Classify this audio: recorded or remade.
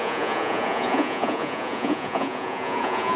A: remade